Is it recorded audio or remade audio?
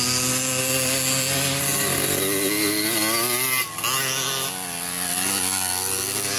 recorded